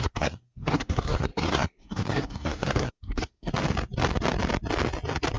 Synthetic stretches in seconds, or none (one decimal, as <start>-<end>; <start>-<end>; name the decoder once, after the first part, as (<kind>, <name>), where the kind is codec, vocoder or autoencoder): 0.0-3.5 (codec, SNAC)